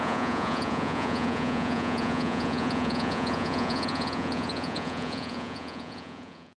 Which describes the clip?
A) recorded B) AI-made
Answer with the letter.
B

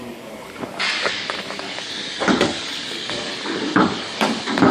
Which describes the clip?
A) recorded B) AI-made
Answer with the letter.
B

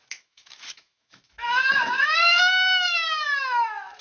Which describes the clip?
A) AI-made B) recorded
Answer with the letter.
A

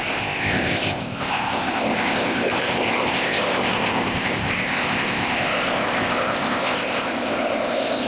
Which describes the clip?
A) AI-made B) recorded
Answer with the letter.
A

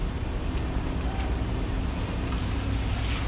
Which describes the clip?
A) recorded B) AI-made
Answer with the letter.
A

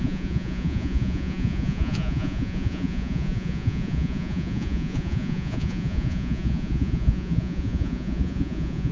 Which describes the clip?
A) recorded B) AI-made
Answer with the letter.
B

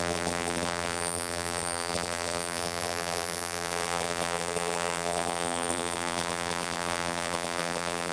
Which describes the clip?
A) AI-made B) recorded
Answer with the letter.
A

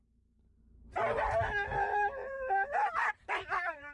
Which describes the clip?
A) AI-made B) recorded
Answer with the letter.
A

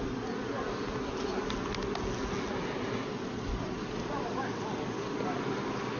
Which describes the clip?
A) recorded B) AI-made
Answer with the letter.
A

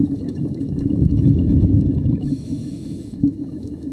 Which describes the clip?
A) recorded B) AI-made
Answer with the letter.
B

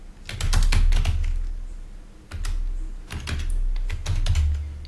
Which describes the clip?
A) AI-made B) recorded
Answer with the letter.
B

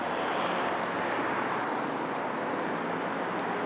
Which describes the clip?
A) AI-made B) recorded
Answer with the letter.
B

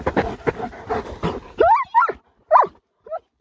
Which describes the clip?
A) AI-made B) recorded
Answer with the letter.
B